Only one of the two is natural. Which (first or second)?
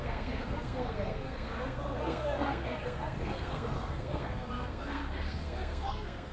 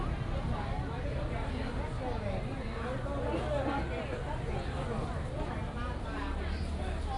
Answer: second